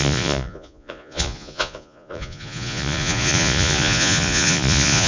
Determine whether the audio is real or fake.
fake